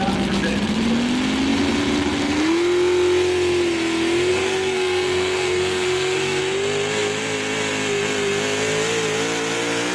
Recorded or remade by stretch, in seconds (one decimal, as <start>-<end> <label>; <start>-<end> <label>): 0.0-4.3 recorded; 4.3-6.4 remade; 6.4-9.9 recorded